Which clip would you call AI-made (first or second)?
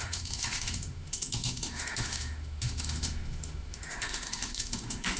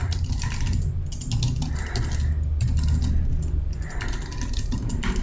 first